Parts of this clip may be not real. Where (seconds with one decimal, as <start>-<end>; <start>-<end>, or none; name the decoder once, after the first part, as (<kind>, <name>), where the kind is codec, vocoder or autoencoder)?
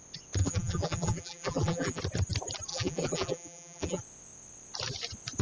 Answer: 0.4-2.0 (vocoder, BigVGAN v2); 2.7-4.0